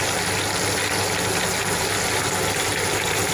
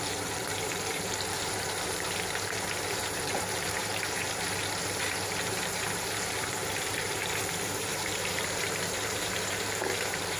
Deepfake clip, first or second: second